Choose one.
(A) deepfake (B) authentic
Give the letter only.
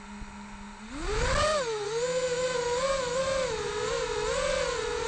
B